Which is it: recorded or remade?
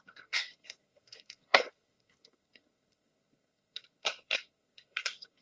remade